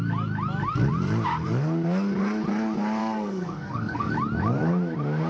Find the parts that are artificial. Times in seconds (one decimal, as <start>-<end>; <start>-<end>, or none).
3.0-4.1